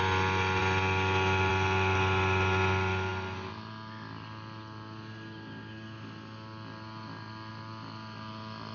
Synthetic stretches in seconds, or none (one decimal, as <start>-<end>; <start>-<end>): none